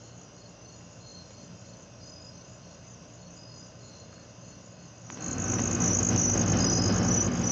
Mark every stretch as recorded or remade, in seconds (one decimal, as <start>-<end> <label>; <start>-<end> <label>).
0.0-7.5 recorded